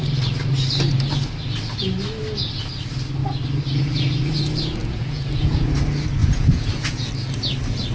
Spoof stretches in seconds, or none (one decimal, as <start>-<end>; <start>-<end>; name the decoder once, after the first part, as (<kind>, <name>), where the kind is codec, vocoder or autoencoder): 4.8-5.7 (vocoder, Vocos); 6.2-7.1